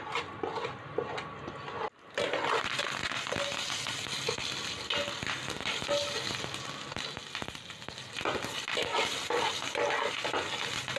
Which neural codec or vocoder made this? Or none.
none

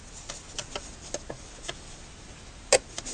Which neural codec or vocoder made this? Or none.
none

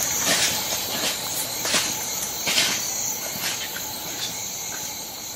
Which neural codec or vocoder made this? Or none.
vocoder, BigVGAN v2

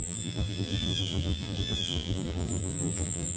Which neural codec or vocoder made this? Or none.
vocoder, BigVGAN v2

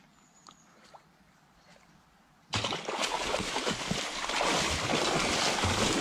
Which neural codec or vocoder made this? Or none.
vocoder, BigVGAN v2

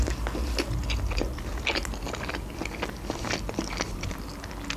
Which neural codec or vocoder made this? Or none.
none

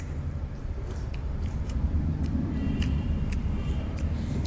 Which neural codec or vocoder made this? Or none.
vocoder, BigVGAN v2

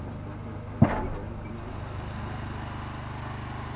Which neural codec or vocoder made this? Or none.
none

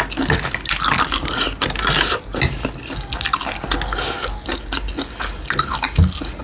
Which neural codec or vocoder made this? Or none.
none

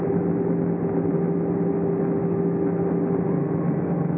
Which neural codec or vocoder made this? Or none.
none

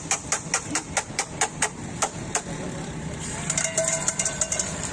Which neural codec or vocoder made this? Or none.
vocoder, BigVGAN v2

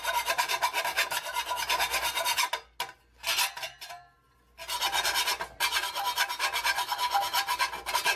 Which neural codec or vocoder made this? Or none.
none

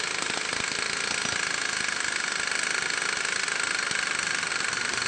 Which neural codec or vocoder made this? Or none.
none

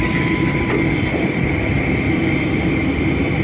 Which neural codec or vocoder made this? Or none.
none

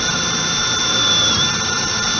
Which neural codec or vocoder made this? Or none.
vocoder, BigVGAN v2